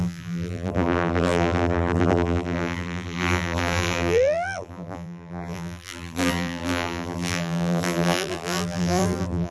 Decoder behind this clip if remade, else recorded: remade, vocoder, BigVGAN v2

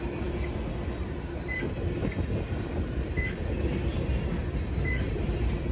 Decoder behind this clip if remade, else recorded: recorded